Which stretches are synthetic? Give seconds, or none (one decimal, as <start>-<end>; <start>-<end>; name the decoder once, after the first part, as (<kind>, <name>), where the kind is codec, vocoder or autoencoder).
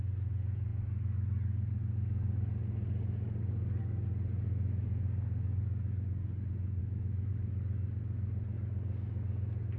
6.8-7.3 (autoencoder, DAC-VAE)